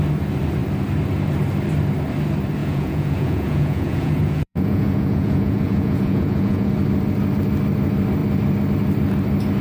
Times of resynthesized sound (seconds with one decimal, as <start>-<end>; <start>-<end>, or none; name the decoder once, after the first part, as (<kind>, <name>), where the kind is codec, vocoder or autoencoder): 2.6-6.7 (vocoder, Vocos)